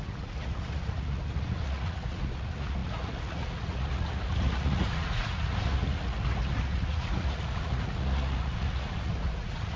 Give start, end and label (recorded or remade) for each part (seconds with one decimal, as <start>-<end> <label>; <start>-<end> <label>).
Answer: 0.0-9.8 remade